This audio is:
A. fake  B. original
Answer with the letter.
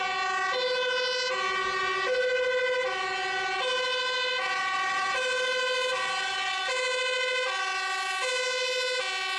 B